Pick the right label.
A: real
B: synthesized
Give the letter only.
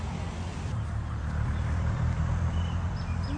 B